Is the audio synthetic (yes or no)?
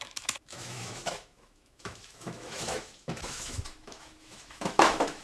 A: yes